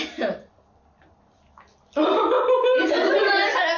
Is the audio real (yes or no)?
yes